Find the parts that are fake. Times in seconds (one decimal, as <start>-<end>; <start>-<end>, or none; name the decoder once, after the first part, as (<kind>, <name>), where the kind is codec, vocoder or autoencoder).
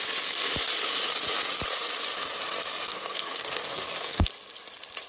2.9-4.3 (codec, SNAC)